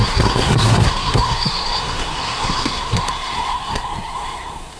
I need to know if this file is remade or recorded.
remade